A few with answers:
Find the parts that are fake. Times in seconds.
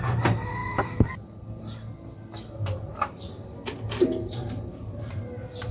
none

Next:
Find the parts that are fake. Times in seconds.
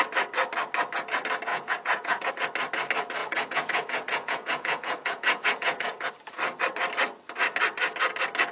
1.5-2.3 (vocoder, Vocos); 3.2-6.1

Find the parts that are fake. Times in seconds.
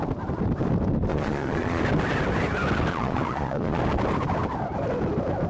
1.1-1.8 (vocoder, Vocos); 2.9-3.8